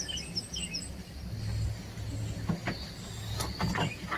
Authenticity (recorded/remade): recorded